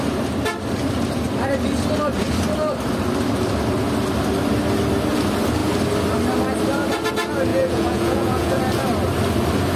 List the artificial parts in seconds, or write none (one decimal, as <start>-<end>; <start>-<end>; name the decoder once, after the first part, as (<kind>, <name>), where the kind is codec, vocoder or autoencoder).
7.5-8.6 (vocoder, Vocos)